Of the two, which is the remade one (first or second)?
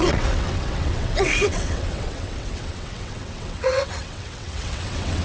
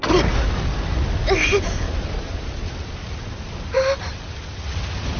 first